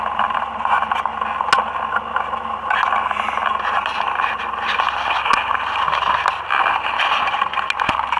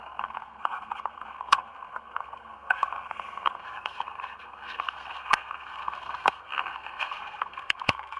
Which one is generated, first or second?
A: second